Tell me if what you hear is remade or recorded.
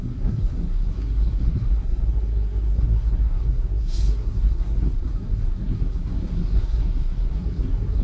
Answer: remade